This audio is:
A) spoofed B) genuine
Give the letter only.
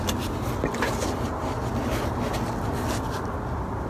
B